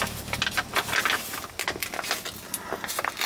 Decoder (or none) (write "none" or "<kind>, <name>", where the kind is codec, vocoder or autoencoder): none